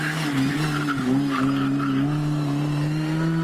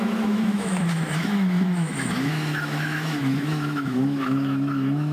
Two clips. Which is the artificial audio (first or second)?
second